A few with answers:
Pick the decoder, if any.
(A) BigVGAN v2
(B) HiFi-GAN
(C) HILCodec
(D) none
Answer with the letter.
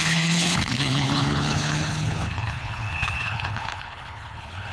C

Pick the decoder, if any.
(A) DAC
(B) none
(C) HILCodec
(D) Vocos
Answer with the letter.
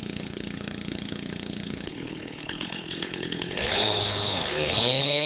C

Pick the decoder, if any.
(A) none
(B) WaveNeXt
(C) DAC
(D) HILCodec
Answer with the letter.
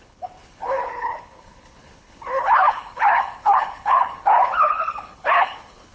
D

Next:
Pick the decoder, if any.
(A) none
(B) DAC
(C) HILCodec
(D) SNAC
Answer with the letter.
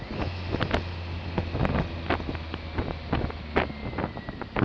A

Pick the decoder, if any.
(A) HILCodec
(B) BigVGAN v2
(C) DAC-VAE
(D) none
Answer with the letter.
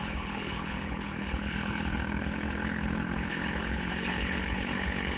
A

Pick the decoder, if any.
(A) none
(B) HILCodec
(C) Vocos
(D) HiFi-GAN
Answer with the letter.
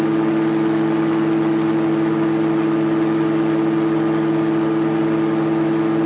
A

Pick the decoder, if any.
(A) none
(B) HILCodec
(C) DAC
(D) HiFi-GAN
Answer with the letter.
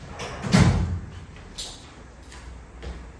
A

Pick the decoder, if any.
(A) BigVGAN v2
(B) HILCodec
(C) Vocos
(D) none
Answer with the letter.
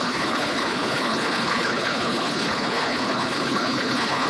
B